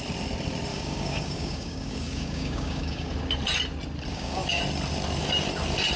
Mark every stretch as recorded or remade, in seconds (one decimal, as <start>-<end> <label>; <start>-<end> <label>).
0.0-0.7 recorded; 0.7-3.1 remade; 3.1-4.1 recorded; 4.1-4.6 remade; 4.6-6.0 recorded